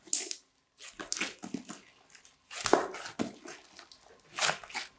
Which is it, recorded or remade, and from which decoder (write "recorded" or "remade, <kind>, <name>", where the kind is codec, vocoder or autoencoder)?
recorded